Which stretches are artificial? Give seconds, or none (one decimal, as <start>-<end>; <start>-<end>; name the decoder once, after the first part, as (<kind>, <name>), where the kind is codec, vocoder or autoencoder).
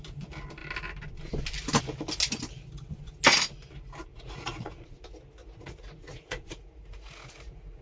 4.1-5.0 (vocoder, Vocos); 5.4-7.8